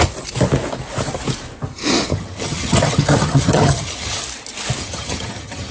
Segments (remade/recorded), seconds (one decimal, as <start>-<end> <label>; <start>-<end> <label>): 0.0-2.1 recorded; 2.1-4.2 remade; 4.2-4.8 recorded; 4.8-5.7 remade